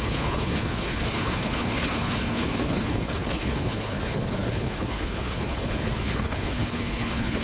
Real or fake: fake